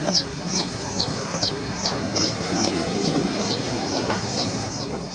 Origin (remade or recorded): remade